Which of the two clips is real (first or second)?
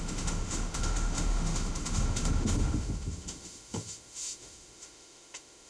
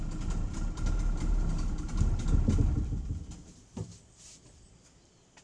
second